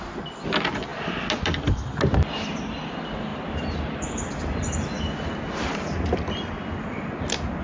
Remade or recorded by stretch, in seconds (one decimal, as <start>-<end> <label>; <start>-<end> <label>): 0.0-7.6 recorded